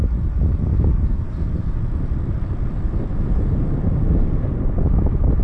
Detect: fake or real real